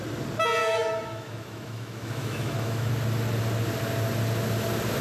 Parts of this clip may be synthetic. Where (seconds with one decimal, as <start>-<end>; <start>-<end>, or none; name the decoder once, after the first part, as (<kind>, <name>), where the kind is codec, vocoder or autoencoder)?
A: 0.6-2.9 (autoencoder, DAC-VAE)